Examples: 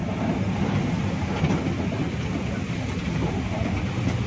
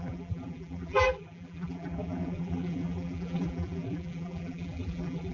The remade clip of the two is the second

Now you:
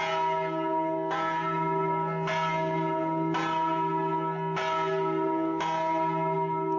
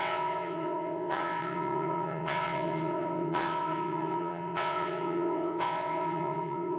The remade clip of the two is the second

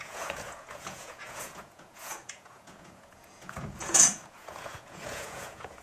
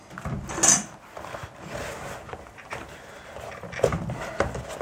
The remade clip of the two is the first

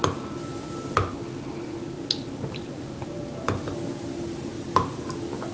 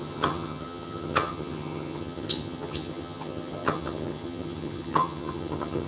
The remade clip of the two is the second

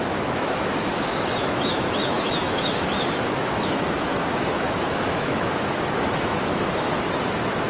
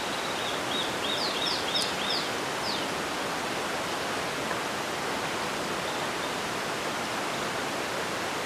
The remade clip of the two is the first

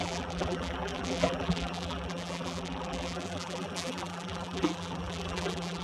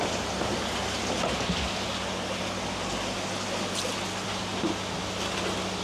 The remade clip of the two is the first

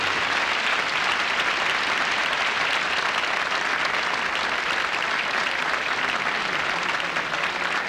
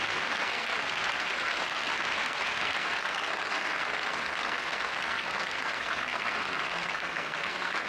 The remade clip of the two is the second